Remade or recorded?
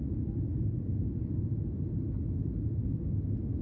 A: recorded